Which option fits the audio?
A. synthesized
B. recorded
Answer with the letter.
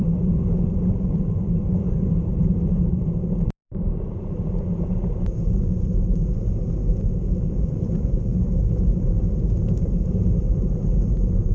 A